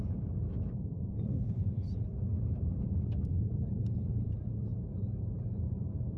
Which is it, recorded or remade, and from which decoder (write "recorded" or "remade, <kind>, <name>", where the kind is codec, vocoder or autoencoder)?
remade, vocoder, BigVGAN v2